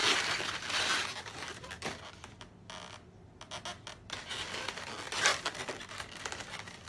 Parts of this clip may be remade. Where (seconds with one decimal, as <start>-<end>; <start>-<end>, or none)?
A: none